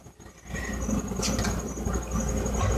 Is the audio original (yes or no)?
yes